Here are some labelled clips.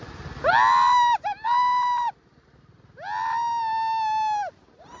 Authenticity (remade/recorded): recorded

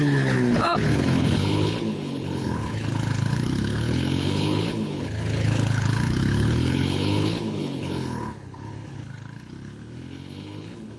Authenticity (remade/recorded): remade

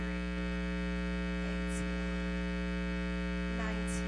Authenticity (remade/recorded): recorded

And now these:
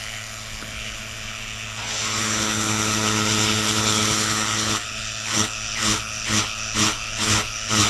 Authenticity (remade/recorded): remade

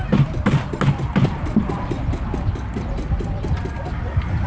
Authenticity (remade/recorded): recorded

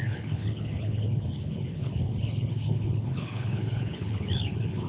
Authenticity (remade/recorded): remade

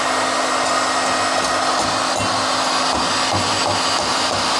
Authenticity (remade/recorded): recorded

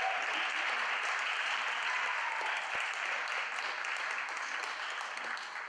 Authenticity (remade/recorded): recorded